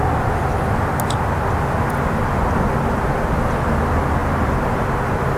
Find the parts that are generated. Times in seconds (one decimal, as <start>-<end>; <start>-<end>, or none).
0.5-1.5; 4.2-5.4